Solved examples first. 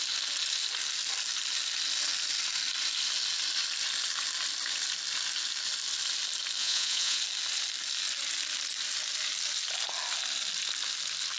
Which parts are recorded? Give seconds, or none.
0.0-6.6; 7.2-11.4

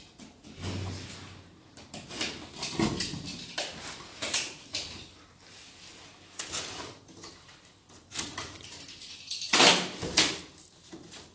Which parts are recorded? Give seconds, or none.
0.0-4.1; 4.6-11.3

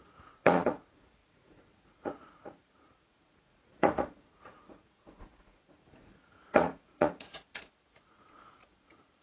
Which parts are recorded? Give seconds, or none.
none

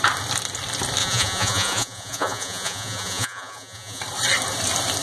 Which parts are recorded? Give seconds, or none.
0.0-1.0; 4.0-5.0